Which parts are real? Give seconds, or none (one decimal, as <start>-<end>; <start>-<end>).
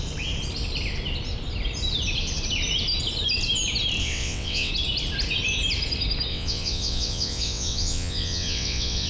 0.0-4.0; 4.7-6.3